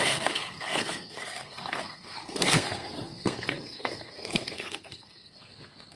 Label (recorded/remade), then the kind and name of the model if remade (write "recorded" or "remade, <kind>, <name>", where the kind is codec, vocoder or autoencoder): remade, codec, SNAC